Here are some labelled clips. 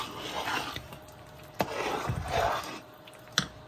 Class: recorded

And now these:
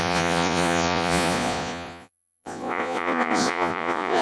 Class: remade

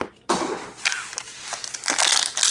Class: recorded